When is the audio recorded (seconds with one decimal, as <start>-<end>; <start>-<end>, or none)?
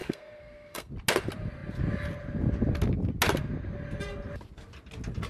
0.9-5.3